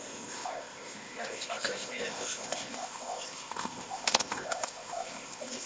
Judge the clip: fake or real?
fake